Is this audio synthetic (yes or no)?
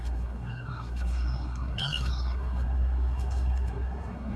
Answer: yes